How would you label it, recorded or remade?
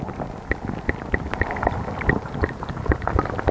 remade